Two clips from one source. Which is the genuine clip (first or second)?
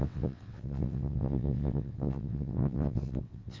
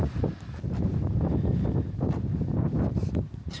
second